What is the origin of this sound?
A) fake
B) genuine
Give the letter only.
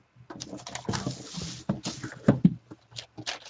B